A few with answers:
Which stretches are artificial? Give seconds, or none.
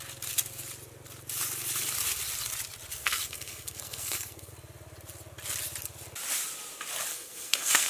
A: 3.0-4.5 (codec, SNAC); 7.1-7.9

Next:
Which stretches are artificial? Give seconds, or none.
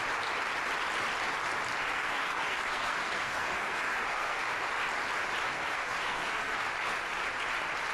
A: 1.8-4.4 (codec, SNAC); 5.5-6.7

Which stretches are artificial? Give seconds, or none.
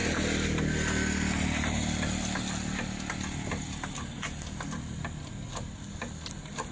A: none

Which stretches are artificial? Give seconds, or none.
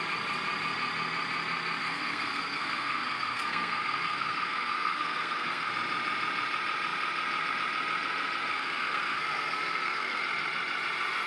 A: 1.8-5.7 (codec, SNAC); 8.5-10.2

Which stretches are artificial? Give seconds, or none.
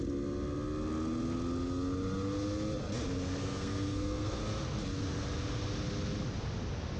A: 3.4-4.4 (codec, SNAC)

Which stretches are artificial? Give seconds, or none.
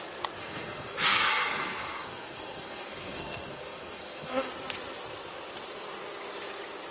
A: 0.4-4.5 (codec, SNAC)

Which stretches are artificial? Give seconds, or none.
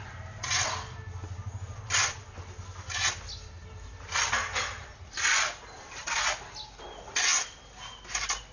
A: none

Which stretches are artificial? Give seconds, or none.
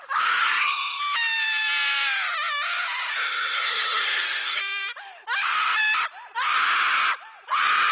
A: 0.4-1.0 (codec, SNAC); 3.1-4.6